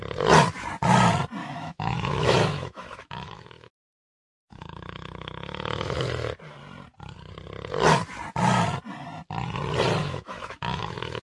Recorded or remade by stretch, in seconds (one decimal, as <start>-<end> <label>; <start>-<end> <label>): 0.0-1.4 recorded; 1.4-6.1 remade; 6.1-10.0 recorded; 10.0-11.2 remade